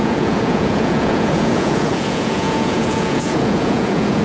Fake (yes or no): yes